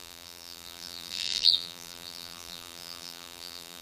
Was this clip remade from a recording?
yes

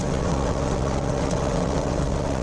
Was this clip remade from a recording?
yes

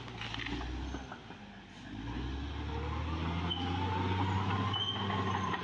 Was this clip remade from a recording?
no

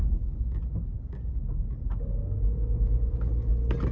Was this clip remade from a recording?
no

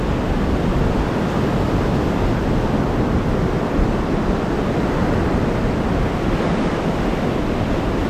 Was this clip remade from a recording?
no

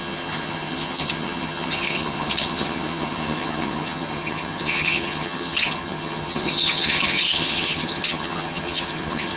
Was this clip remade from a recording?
yes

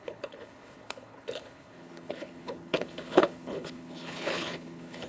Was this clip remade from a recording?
yes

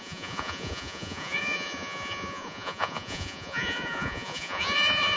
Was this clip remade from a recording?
yes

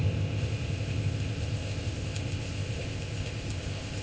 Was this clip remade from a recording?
yes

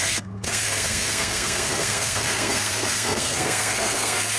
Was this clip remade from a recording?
yes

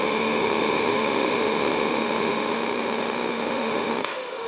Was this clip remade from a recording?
yes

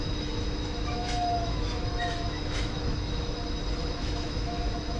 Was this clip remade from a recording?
yes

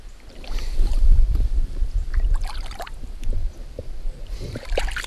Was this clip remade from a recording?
yes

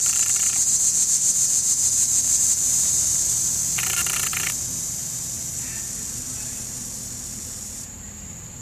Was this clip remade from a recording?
yes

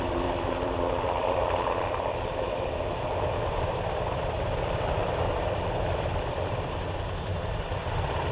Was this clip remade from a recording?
yes